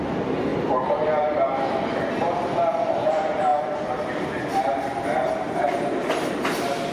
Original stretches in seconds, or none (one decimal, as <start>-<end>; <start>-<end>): none